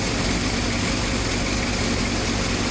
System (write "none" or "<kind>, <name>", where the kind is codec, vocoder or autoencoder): none